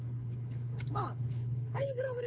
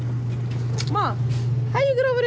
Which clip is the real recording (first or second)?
second